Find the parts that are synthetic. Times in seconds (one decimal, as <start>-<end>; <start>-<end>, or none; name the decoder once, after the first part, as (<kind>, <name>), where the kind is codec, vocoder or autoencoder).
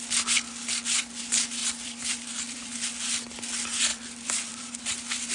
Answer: 1.6-2.7 (vocoder, BigVGAN v2); 3.9-5.3